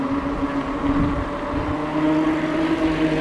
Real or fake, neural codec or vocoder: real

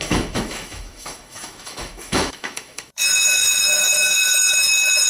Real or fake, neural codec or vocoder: fake, autoencoder, DAC-VAE